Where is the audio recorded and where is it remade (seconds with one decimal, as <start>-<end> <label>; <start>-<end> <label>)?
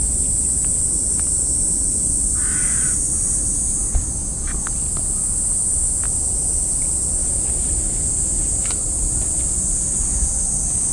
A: 0.0-7.2 recorded; 7.2-8.0 remade; 8.0-10.9 recorded